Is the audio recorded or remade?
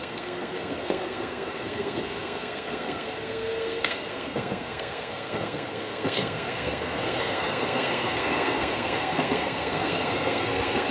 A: remade